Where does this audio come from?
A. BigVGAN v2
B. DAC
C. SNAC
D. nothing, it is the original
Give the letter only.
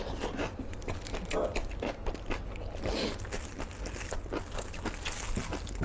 D